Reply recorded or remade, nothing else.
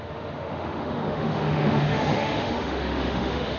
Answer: remade